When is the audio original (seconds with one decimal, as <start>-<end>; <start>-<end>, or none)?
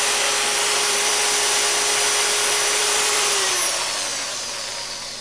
0.0-0.5; 1.2-2.8; 3.5-4.1; 4.7-5.2